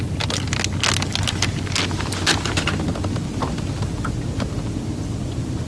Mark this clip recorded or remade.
recorded